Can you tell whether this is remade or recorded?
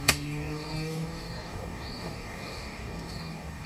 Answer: remade